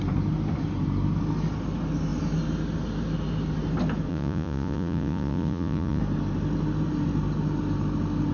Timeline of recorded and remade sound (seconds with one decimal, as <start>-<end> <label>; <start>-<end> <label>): 0.0-4.1 recorded; 4.1-6.0 remade; 6.0-8.3 recorded